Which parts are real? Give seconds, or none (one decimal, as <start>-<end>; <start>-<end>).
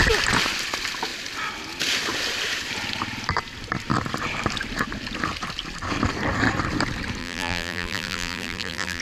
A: 0.0-7.2